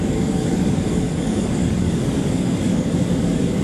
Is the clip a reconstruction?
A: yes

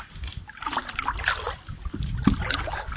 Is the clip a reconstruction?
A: no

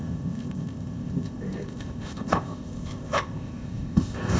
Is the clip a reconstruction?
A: yes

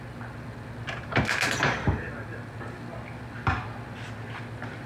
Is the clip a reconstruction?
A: no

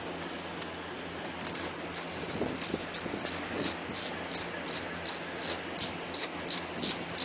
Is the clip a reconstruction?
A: no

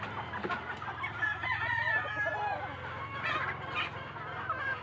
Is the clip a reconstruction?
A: no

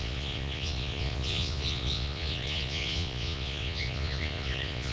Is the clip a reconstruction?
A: yes